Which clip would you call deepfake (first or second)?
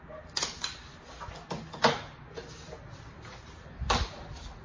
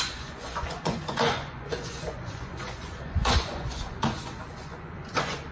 second